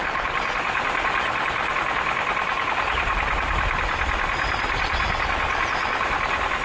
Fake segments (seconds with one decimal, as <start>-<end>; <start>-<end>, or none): none